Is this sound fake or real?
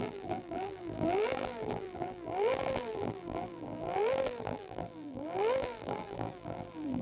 fake